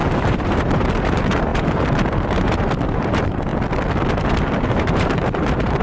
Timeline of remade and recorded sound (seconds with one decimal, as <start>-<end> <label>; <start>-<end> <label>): 0.0-3.5 remade; 3.5-4.3 recorded; 4.3-5.8 remade